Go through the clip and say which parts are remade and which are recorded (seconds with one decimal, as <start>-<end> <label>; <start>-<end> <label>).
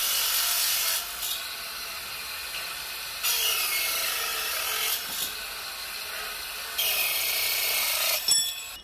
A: 0.0-8.8 recorded